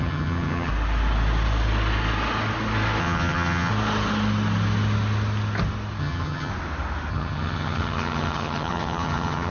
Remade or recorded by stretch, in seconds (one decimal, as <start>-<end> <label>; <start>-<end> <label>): 0.0-0.7 remade; 0.7-3.0 recorded; 3.0-3.7 remade; 3.7-6.0 recorded; 6.0-6.5 remade; 6.5-7.1 recorded; 7.1-9.5 remade